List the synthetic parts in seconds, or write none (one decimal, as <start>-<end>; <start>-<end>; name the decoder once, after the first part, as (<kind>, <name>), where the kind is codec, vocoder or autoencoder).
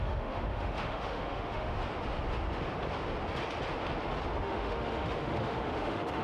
0.0-1.8 (autoencoder, DAC-VAE); 4.4-6.2